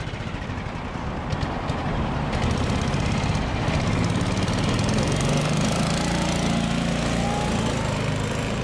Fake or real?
real